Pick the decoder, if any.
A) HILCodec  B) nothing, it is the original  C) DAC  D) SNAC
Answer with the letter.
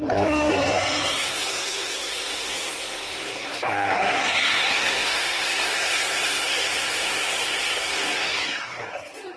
D